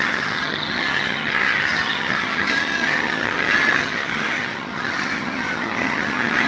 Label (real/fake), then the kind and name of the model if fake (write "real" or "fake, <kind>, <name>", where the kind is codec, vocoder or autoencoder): fake, vocoder, HiFi-GAN